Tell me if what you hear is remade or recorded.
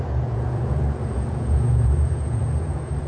remade